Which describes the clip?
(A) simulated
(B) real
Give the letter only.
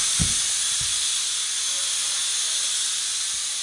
B